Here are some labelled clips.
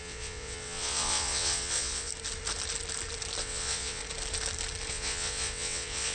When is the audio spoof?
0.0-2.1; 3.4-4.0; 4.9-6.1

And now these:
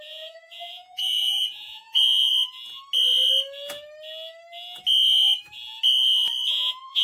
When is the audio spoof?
0.0-2.3; 6.5-7.0

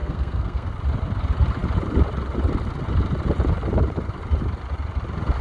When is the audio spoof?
0.0-0.7

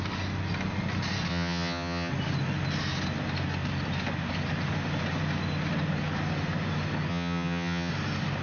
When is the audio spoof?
1.3-2.1; 7.1-7.9

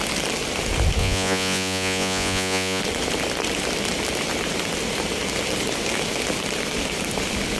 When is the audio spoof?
1.0-2.8

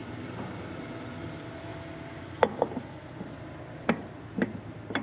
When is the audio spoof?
0.0-1.7; 3.9-5.0